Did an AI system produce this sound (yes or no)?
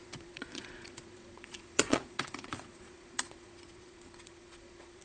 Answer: yes